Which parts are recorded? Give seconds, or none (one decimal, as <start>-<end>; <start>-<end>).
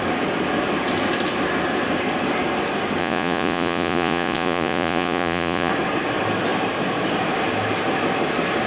0.0-3.0; 5.7-8.7